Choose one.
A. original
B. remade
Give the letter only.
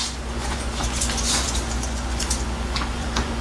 B